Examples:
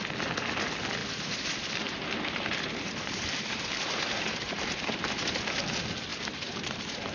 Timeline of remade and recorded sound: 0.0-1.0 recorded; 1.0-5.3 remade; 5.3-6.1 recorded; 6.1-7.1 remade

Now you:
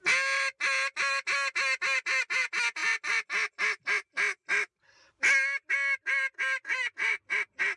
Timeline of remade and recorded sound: 0.0-7.8 recorded

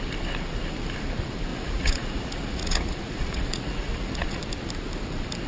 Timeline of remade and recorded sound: 0.0-1.5 recorded; 1.5-4.4 remade; 4.4-5.5 recorded

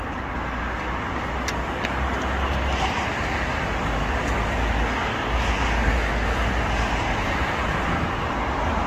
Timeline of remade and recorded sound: 0.0-8.9 recorded

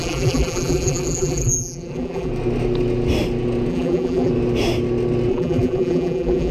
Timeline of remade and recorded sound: 0.0-2.3 remade; 2.3-3.7 recorded; 3.7-4.3 remade; 4.3-5.3 recorded; 5.3-6.5 remade

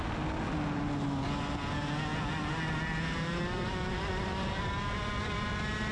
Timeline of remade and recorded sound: 0.0-5.9 recorded